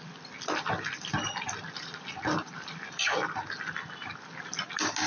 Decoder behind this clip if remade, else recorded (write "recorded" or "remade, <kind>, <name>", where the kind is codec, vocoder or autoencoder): recorded